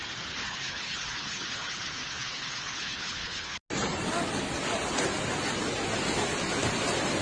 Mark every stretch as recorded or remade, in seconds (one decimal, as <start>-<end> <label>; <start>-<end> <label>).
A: 0.0-0.4 recorded; 0.4-3.6 remade; 3.6-7.2 recorded